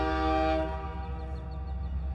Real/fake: real